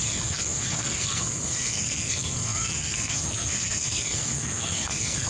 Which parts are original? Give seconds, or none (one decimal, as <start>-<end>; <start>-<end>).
none